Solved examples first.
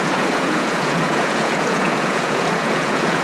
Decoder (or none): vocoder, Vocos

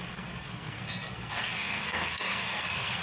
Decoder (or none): codec, SNAC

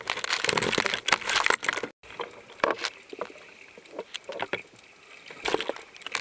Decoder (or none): none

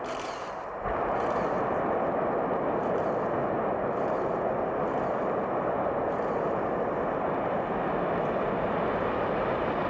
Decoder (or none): none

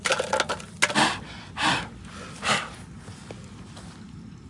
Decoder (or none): none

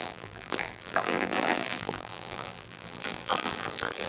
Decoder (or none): vocoder, BigVGAN v2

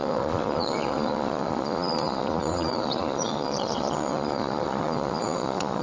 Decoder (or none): vocoder, Vocos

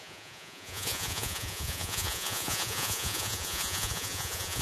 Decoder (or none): vocoder, Vocos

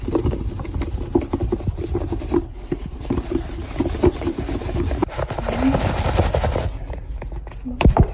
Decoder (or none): vocoder, BigVGAN v2